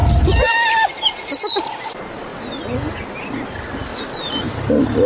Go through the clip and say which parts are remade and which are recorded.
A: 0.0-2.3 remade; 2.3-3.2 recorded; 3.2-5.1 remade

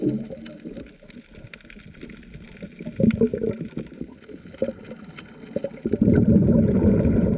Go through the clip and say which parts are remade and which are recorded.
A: 0.0-3.3 recorded; 3.3-7.4 remade

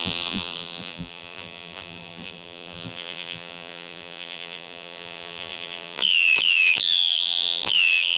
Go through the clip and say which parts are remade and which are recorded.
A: 0.0-8.2 remade

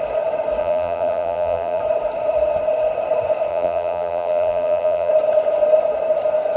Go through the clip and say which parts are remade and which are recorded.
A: 0.0-0.6 recorded; 0.6-1.8 remade; 1.8-3.5 recorded; 3.5-5.1 remade; 5.1-6.6 recorded

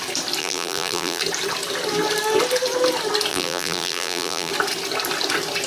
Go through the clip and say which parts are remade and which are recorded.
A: 0.0-0.4 recorded; 0.4-1.2 remade; 1.2-3.3 recorded; 3.3-4.5 remade; 4.5-5.7 recorded